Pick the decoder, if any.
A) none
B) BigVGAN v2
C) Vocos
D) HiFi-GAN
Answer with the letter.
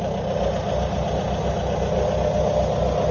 A